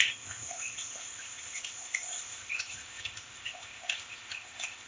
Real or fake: fake